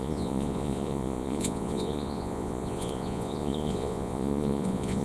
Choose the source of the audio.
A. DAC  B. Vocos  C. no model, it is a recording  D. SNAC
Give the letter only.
B